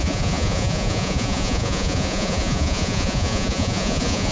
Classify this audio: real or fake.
fake